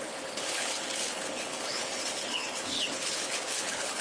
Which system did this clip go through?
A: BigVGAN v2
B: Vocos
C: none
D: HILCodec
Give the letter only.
D